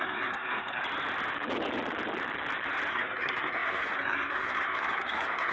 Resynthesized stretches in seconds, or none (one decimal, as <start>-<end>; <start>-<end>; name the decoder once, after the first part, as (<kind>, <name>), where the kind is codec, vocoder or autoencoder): 0.0-0.8 (codec, SNAC); 2.9-5.5